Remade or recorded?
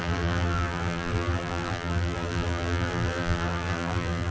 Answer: remade